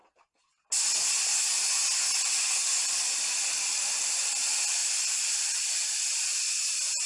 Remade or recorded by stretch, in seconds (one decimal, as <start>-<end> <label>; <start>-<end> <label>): 0.0-7.1 recorded